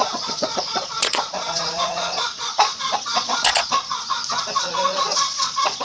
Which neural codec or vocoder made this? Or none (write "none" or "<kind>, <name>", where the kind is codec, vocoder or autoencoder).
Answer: vocoder, Vocos